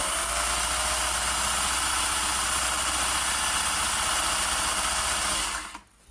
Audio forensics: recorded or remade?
recorded